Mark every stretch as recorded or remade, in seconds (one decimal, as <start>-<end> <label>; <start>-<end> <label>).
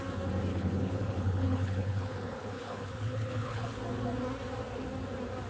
0.0-0.5 recorded; 0.5-3.8 remade; 3.8-5.5 recorded